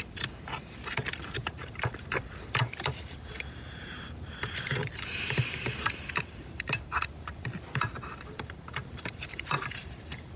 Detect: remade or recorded remade